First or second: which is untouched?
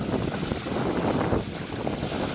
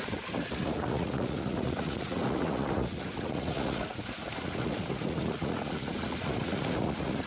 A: first